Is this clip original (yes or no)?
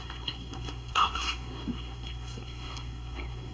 no